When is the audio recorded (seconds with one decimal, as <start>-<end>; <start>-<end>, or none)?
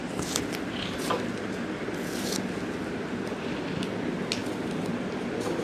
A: 0.0-5.6